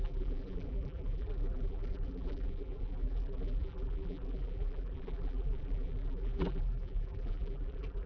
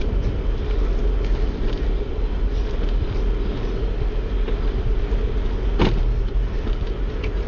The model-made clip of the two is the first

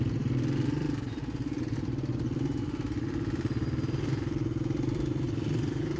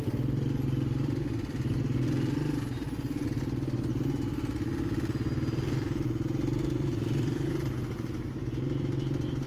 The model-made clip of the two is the first